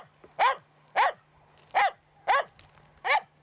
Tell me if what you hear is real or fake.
real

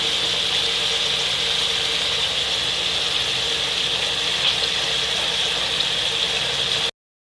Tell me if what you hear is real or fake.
real